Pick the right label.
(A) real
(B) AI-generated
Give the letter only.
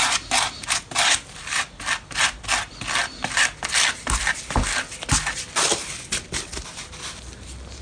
A